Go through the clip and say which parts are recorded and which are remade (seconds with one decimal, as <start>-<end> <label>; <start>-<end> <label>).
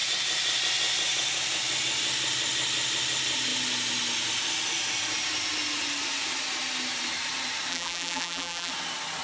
0.0-7.7 recorded; 7.7-8.7 remade; 8.7-9.2 recorded